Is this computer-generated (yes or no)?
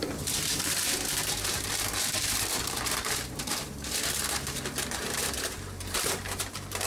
yes